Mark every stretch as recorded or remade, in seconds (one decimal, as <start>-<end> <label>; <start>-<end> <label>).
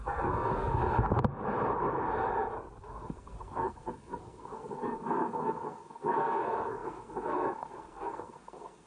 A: 0.0-0.8 remade; 0.8-2.8 recorded; 2.8-8.9 remade